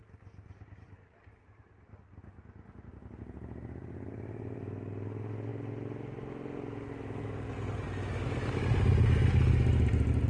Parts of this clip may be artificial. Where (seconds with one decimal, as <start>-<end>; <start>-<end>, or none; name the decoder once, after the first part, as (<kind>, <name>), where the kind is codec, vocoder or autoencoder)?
none